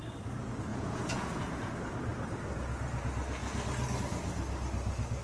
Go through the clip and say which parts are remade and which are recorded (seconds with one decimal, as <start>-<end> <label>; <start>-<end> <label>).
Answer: 0.0-0.7 recorded; 0.7-1.7 remade; 1.7-5.2 recorded